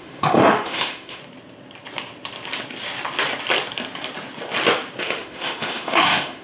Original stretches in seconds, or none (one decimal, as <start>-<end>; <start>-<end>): 1.2-5.0